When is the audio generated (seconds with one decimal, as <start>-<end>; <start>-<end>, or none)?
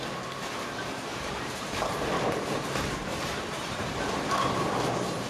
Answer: 1.1-4.3